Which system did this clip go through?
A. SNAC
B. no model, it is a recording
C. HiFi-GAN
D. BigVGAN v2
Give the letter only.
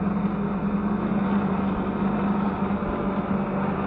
B